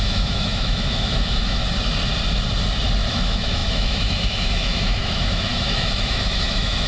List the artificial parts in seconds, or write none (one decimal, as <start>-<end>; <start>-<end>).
0.0-1.6; 3.1-6.9